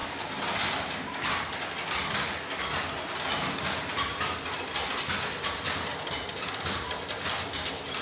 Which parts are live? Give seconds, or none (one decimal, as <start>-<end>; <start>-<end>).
0.0-8.0

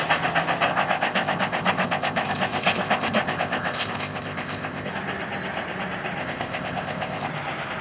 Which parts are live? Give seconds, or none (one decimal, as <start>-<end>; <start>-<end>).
0.0-0.7; 4.9-6.2; 7.3-7.8

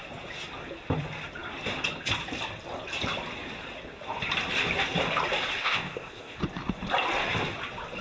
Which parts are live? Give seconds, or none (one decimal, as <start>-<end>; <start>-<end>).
0.0-5.6; 6.4-8.0

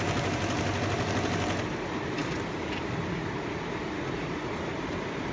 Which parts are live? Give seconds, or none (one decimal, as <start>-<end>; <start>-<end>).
0.0-5.3

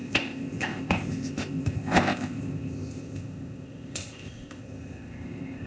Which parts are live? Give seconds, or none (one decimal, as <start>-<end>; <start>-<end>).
none

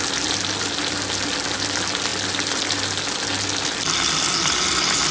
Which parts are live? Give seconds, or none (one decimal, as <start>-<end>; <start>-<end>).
0.0-5.1

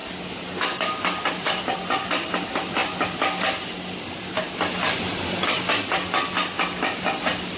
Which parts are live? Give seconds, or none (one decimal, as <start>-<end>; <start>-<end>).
0.0-7.6